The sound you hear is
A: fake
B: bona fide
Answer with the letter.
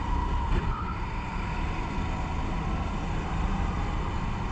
B